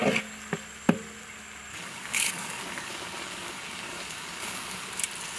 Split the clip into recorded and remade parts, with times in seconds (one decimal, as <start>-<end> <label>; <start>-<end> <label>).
0.0-1.7 recorded; 1.7-4.9 remade; 4.9-5.4 recorded